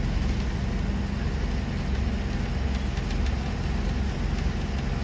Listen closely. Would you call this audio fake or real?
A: real